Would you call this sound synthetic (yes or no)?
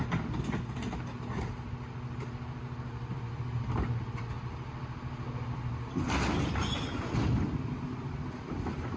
no